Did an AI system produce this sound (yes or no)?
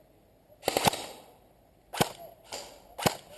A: no